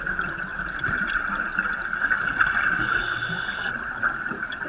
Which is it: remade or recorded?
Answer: recorded